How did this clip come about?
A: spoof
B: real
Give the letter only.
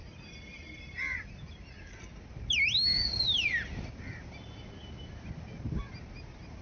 B